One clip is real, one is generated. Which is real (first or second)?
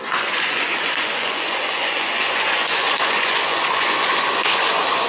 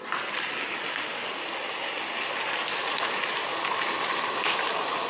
second